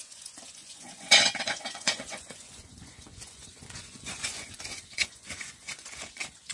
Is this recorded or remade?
remade